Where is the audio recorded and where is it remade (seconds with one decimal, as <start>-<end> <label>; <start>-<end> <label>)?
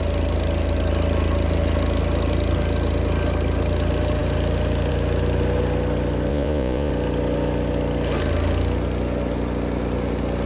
0.0-6.3 recorded; 6.3-6.9 remade; 6.9-10.5 recorded